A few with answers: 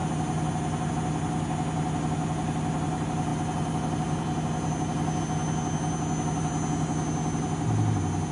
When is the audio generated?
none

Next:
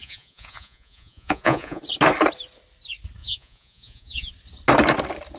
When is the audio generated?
0.0-1.8 (vocoder, Vocos); 3.2-4.3

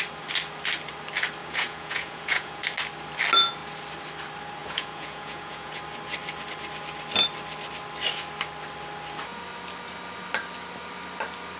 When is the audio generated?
1.4-2.6 (vocoder, Vocos); 4.6-5.8

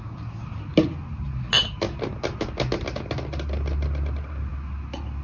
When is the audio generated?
none

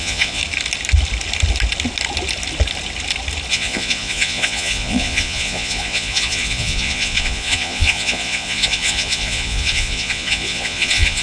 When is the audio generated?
0.0-0.4 (vocoder, Vocos); 3.5-11.2

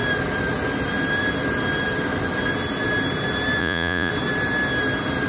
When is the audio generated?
3.6-4.1 (vocoder, Vocos)